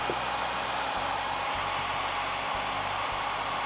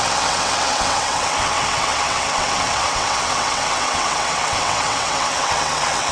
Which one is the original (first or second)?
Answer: first